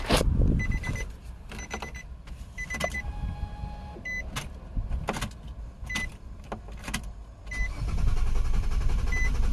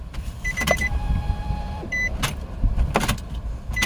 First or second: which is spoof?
second